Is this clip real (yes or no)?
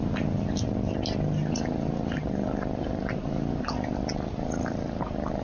yes